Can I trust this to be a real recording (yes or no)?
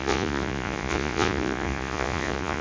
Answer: no